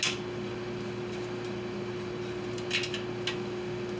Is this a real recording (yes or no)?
yes